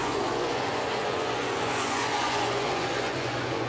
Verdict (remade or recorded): remade